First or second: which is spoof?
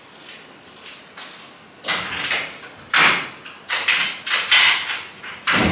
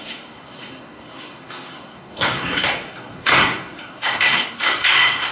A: second